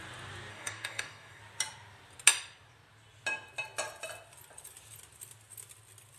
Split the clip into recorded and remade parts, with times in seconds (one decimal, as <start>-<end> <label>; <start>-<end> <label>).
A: 0.0-0.5 recorded; 0.5-1.4 remade; 1.4-6.2 recorded